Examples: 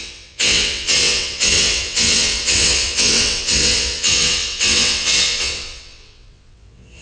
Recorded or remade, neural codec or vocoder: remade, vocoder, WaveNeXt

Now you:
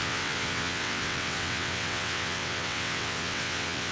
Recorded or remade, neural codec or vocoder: remade, vocoder, WaveNeXt